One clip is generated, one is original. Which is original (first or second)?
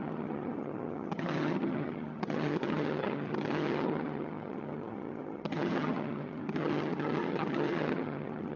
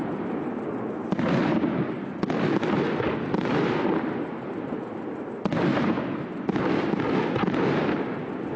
second